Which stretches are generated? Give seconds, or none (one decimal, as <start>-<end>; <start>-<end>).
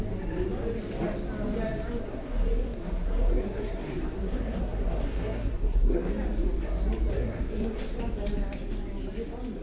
2.0-6.1; 7.1-7.9